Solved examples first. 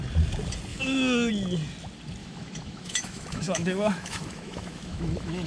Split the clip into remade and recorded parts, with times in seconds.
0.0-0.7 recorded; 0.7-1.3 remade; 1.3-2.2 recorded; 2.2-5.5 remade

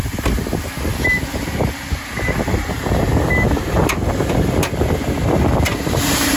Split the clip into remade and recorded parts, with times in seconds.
0.0-6.4 recorded

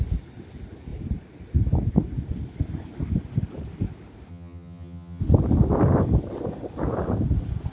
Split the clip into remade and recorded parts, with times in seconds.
0.0-4.3 recorded; 4.3-5.2 remade; 5.2-7.7 recorded

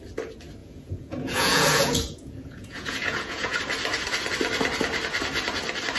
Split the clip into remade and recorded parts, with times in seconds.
0.0-0.6 recorded; 0.6-3.6 remade; 3.6-6.0 recorded

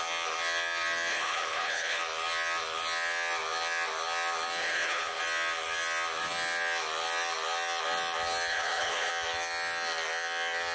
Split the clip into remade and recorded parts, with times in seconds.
0.0-1.1 recorded; 1.1-2.0 remade; 2.0-4.6 recorded; 4.6-5.2 remade; 5.2-8.5 recorded; 8.5-9.1 remade; 9.1-10.7 recorded